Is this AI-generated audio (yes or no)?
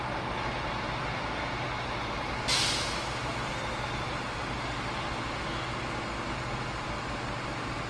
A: no